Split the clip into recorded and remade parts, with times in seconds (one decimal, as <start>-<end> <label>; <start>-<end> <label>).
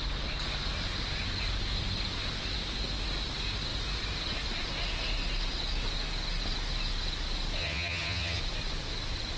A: 0.0-7.6 recorded; 7.6-8.4 remade; 8.4-9.4 recorded